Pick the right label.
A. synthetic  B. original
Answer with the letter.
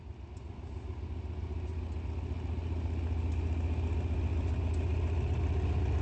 B